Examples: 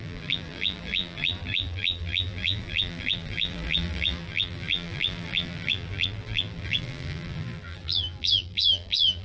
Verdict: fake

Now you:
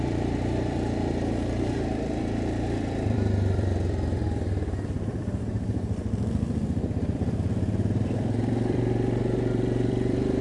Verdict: fake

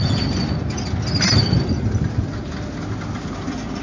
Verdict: real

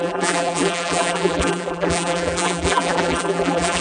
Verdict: fake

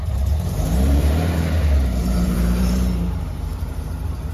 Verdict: fake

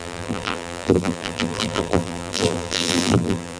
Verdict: fake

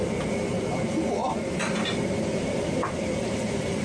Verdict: fake